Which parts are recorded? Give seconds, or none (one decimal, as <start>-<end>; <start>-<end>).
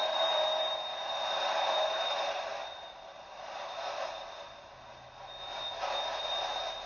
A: 3.7-6.9